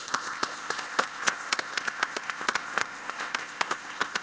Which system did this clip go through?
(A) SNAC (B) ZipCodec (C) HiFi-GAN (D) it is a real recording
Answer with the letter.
B